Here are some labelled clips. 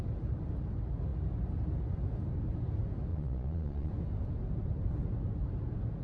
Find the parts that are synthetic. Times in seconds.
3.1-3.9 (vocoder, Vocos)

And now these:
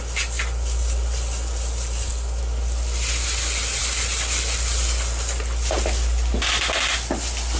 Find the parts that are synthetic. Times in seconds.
none

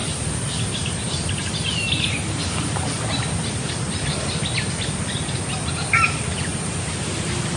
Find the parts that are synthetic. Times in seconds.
0.0-6.5 (vocoder, BigVGAN v2); 7.1-7.6